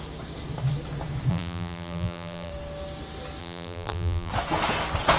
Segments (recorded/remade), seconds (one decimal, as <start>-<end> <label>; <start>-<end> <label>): 0.0-1.3 recorded; 1.3-2.5 remade; 2.5-3.4 recorded; 3.4-4.3 remade; 4.3-5.2 recorded